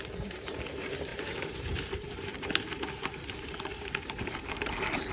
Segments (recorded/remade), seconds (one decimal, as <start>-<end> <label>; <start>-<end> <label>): 0.0-5.1 remade